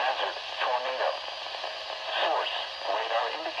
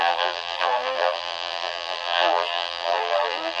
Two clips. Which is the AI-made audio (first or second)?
second